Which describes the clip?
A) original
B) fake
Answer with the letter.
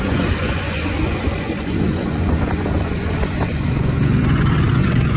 B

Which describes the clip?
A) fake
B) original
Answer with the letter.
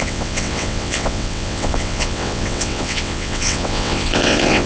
A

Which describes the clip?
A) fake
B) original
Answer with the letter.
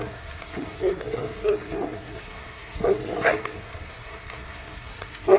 A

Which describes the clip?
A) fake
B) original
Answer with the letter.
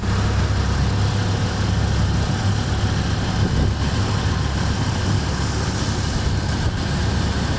B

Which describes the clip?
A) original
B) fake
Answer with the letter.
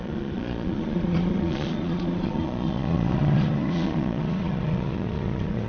B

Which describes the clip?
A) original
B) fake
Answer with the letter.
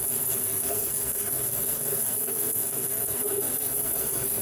B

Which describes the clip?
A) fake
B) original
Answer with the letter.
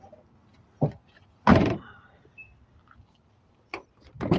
B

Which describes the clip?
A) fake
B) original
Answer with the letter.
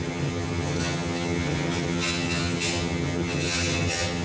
A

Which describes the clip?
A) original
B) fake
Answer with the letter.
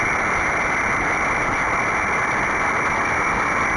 A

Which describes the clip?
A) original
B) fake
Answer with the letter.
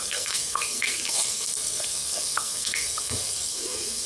B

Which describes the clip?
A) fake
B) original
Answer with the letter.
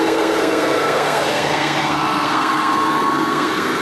A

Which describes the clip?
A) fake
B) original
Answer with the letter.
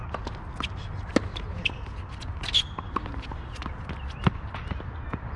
B